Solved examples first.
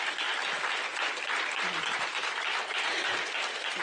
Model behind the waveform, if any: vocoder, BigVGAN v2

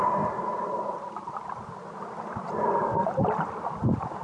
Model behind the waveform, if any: none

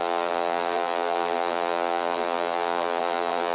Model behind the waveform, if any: vocoder, BigVGAN v2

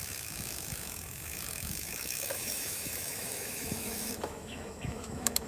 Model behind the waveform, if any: autoencoder, DAC-VAE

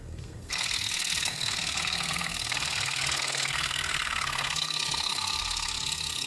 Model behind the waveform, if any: codec, SNAC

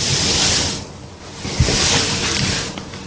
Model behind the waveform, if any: none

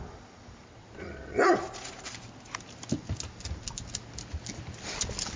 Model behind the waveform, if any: none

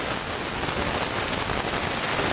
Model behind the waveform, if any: none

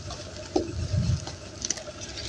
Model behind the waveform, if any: none